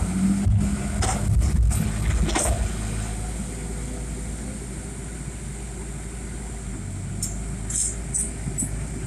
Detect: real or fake real